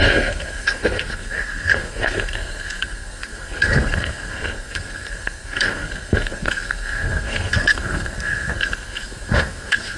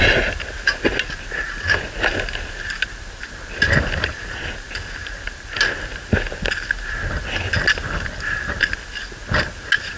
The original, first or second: second